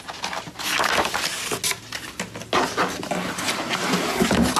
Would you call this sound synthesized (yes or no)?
no